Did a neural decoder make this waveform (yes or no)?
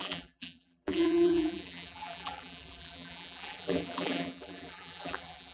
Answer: yes